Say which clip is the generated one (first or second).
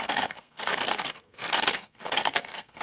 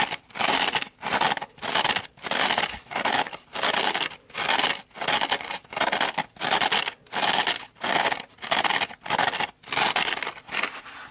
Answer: first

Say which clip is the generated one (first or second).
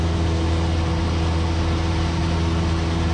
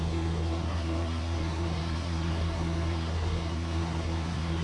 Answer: second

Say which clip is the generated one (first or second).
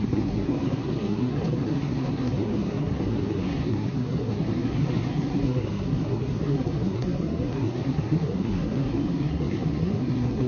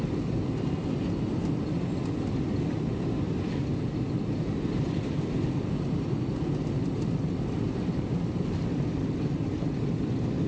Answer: first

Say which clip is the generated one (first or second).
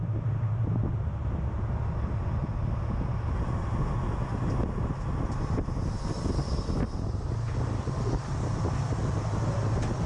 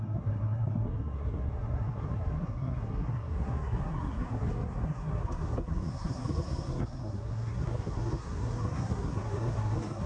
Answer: second